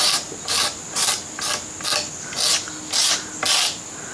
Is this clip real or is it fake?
real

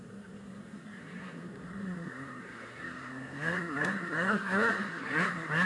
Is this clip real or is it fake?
fake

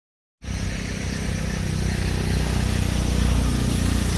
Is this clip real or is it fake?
real